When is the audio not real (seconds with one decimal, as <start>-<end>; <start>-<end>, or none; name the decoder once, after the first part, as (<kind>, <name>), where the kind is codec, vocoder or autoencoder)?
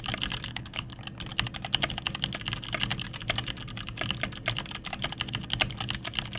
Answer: 0.5-1.0 (codec, HILCodec)